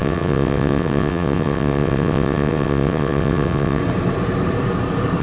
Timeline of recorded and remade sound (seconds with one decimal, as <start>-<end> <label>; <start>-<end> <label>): 0.0-3.8 remade; 3.8-5.2 recorded